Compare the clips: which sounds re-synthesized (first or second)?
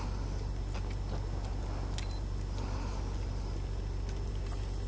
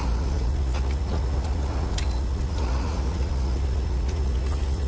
second